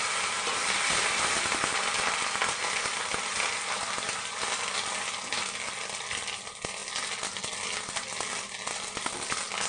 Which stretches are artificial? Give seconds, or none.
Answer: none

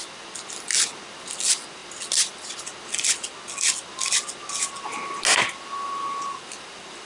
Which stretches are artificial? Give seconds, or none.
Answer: none